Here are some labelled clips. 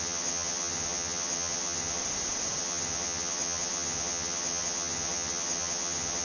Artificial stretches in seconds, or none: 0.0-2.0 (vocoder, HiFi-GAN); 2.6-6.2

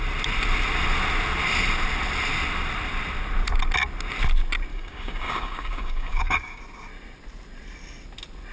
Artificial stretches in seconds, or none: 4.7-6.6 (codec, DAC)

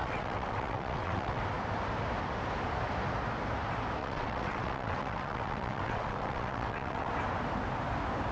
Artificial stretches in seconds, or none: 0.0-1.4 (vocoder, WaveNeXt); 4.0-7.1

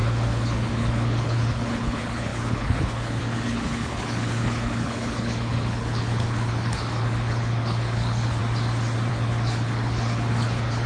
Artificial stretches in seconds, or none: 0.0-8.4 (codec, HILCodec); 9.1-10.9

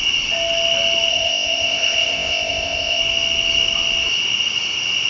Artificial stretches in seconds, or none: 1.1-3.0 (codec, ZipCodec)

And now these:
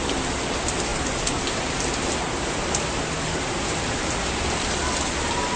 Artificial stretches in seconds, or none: none